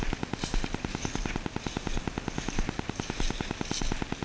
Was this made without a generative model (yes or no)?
yes